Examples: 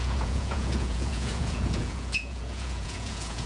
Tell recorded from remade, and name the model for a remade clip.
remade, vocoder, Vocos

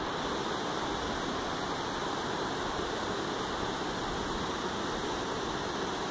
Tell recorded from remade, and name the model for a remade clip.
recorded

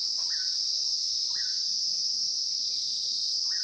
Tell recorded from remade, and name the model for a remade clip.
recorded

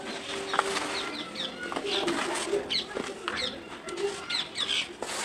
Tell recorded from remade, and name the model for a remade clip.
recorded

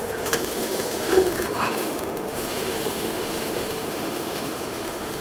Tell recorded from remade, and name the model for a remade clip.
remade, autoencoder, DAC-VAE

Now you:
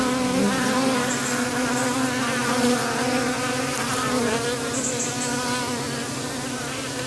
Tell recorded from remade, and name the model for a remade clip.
recorded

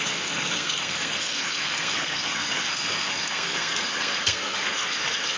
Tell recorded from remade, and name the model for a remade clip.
remade, codec, SNAC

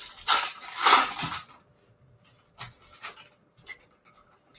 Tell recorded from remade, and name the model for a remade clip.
recorded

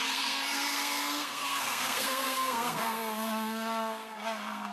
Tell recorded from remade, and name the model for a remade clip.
remade, codec, SNAC